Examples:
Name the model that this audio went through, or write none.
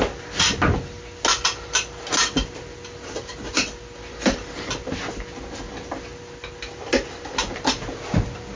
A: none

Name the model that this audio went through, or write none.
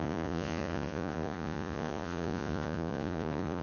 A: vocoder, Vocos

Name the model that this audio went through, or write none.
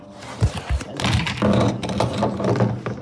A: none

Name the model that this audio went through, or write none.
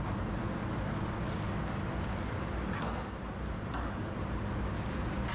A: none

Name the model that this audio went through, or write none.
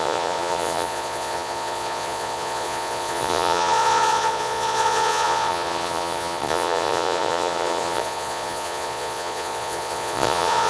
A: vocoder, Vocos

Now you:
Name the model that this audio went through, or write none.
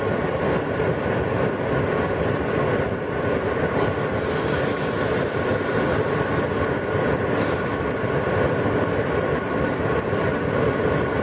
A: none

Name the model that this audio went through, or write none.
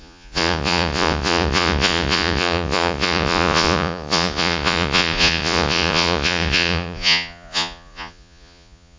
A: vocoder, Vocos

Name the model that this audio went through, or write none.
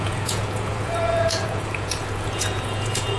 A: vocoder, Vocos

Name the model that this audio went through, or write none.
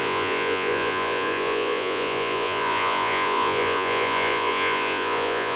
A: vocoder, Vocos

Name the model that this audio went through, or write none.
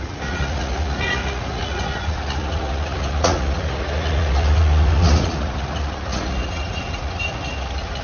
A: vocoder, Vocos